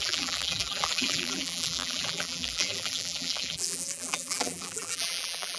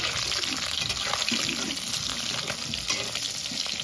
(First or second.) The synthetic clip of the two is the first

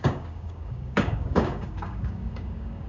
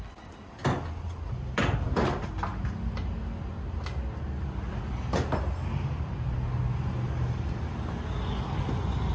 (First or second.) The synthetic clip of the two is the first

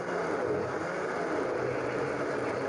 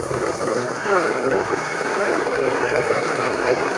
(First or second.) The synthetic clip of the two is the second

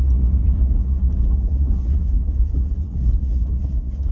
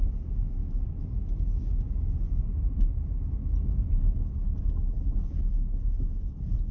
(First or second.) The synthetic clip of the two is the first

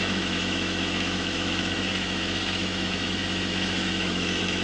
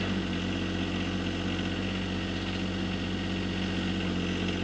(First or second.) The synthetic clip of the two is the first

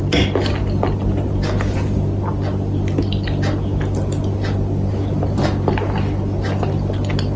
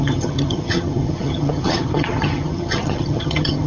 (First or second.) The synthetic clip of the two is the second